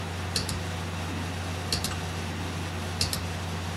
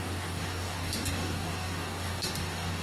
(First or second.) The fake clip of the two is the second